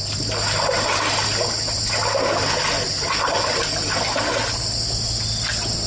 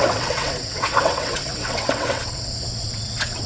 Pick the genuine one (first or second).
first